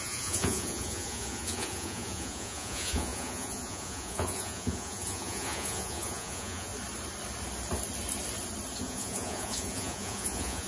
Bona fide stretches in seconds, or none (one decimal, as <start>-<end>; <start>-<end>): 6.7-8.8